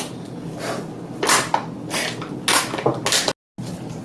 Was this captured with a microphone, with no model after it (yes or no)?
yes